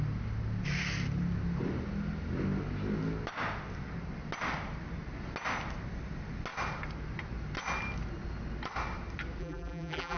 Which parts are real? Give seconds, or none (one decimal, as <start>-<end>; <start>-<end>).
0.0-9.4